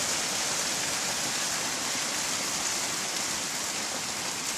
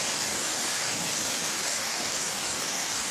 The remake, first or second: second